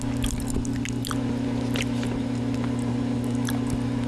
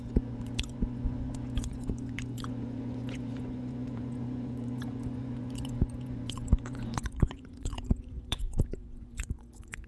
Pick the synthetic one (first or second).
second